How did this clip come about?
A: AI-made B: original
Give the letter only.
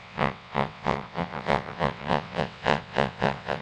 A